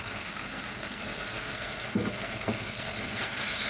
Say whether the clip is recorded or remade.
remade